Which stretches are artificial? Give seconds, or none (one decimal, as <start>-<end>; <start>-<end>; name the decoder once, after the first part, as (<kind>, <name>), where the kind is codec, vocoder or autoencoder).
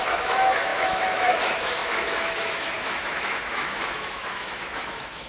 0.0-5.3 (autoencoder, DAC-VAE)